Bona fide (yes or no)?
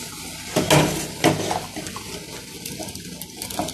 yes